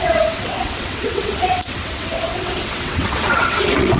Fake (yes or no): yes